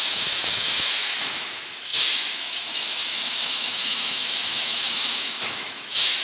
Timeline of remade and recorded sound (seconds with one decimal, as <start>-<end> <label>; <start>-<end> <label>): 0.0-6.2 remade